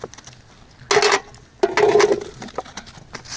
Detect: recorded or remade recorded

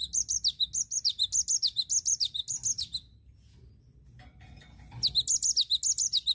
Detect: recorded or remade recorded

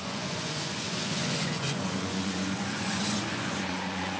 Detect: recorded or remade remade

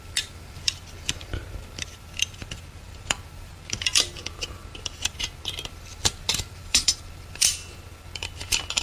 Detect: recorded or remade remade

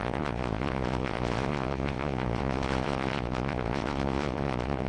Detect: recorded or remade remade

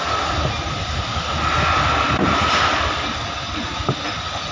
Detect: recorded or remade recorded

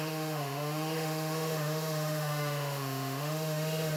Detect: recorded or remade remade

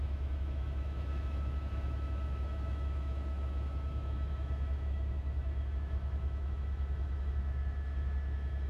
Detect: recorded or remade remade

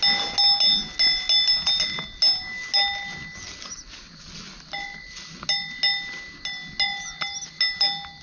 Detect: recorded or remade recorded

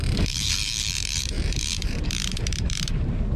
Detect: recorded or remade remade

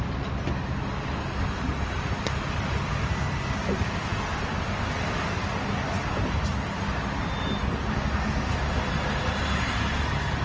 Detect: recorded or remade recorded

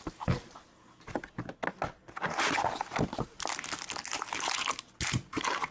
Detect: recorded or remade recorded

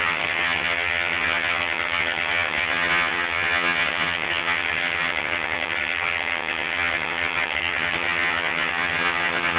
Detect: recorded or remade remade